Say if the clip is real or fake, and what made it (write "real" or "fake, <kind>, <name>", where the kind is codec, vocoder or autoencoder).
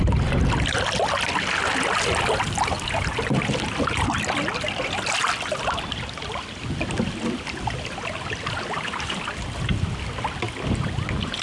real